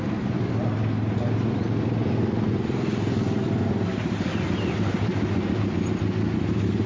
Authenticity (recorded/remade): recorded